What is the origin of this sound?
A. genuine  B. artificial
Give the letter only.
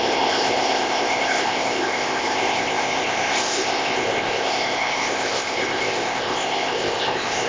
B